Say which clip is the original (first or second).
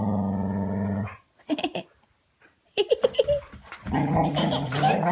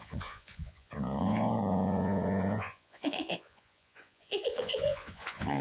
first